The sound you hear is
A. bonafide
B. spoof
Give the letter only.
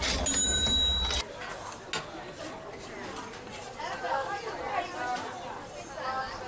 A